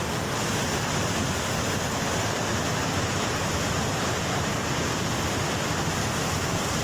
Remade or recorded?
recorded